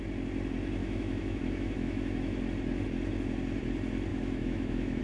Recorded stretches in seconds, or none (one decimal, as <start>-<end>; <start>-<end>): 0.0-0.8; 2.4-4.1